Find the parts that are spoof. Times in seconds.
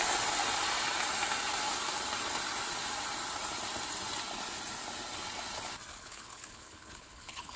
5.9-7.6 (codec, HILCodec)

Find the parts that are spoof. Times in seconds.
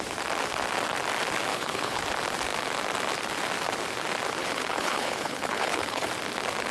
1.5-2.0 (codec, HILCodec); 4.4-6.1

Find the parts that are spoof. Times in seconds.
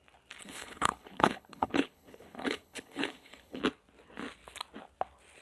0.4-3.6 (codec, HILCodec)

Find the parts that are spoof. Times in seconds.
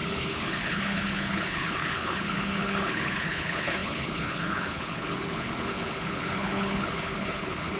0.0-7.8 (codec, HILCodec)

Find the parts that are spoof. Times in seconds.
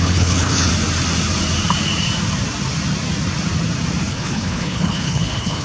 0.0-0.7 (codec, HILCodec); 4.1-5.6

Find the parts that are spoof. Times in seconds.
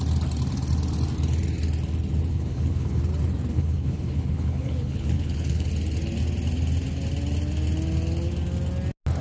2.3-3.0 (codec, HILCodec); 3.5-5.7